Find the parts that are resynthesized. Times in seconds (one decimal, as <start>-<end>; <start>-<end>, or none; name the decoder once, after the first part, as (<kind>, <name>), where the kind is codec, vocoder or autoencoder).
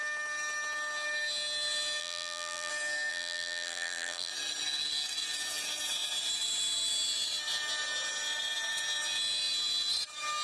2.0-2.7 (vocoder, BigVGAN v2); 3.1-4.3